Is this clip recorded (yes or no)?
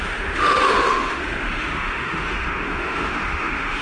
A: no